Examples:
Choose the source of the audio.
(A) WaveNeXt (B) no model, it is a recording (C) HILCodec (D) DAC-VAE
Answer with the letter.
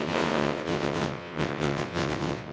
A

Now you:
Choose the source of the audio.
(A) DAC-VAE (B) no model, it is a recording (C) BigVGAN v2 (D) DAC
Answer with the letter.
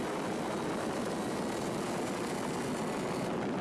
B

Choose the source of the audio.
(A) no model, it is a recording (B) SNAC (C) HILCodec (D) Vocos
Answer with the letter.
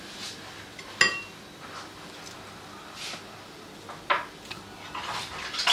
A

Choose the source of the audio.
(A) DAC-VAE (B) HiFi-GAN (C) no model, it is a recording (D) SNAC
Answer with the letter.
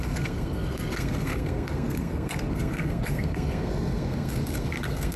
D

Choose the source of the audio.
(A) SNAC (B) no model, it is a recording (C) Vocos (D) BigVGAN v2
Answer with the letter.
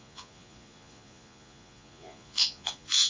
C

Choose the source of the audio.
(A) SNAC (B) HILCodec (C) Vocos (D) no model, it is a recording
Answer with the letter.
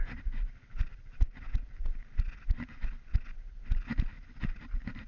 D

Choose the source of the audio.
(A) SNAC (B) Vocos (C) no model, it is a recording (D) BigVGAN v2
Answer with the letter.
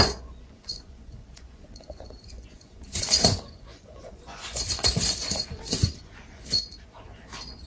B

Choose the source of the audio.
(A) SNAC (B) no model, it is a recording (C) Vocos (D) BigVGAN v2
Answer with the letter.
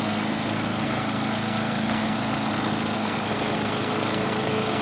A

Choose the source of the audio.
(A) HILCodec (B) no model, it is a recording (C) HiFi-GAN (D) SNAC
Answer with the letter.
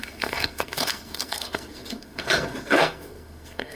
D